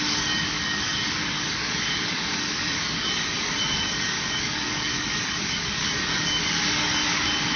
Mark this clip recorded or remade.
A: remade